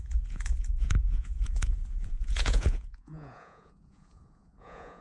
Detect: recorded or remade remade